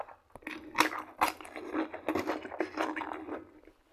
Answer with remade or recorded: recorded